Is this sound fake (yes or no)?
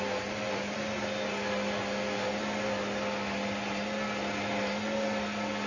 no